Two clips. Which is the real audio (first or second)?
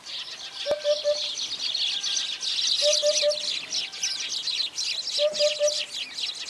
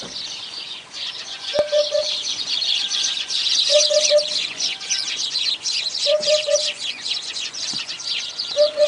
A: first